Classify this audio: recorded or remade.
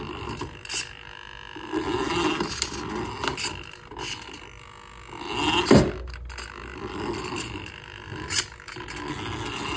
recorded